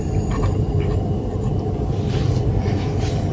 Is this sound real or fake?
real